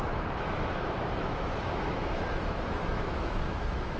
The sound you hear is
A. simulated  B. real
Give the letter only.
A